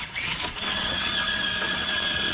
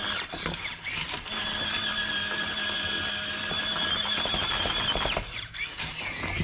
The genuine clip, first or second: second